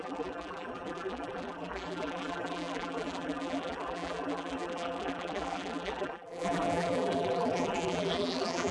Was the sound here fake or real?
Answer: fake